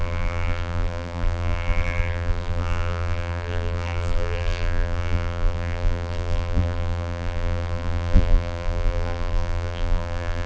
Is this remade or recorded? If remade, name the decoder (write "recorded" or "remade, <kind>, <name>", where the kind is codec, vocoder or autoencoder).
remade, vocoder, BigVGAN v2